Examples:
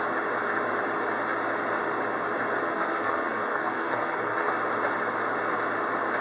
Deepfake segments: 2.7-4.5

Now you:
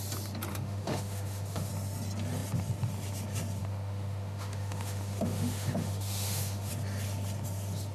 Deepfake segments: 0.5-1.7; 3.6-6.7

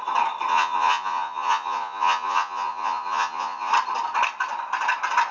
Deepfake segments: 0.5-3.7